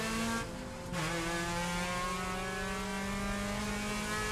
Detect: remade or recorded recorded